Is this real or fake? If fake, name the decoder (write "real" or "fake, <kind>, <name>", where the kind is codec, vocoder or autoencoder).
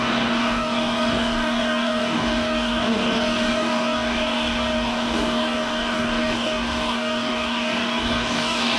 fake, codec, DAC